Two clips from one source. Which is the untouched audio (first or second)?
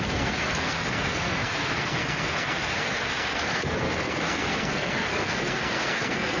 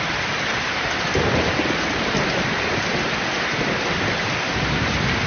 second